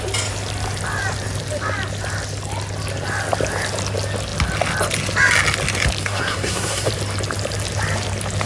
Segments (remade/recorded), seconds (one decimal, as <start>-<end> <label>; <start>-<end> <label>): 0.0-6.0 recorded; 6.0-6.9 remade; 6.9-8.5 recorded